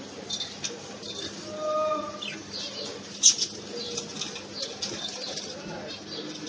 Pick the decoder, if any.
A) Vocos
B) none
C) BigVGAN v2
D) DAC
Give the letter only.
B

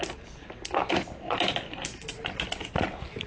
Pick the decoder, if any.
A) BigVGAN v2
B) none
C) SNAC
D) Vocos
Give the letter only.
B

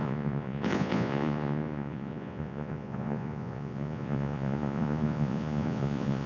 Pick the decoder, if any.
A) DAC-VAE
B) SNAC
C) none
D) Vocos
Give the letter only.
D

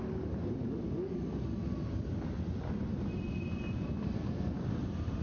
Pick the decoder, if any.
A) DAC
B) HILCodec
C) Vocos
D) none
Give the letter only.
D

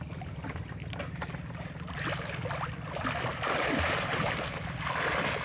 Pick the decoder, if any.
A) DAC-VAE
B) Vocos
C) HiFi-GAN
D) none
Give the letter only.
D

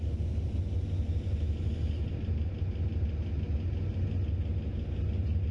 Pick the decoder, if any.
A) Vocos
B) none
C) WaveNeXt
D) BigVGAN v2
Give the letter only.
B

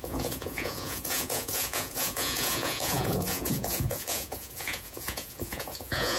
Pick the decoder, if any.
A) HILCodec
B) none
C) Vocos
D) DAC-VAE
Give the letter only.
C